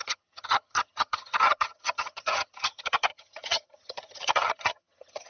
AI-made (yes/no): yes